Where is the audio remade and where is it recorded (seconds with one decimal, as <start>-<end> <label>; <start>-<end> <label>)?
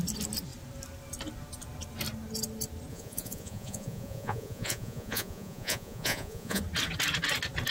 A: 0.0-2.9 recorded; 2.9-6.6 remade; 6.6-7.7 recorded